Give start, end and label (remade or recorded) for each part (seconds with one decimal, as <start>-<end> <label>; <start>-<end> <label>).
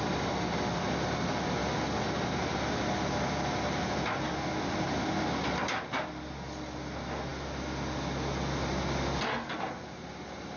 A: 0.0-10.6 recorded